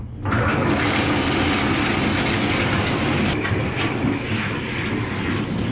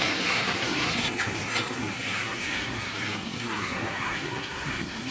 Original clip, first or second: first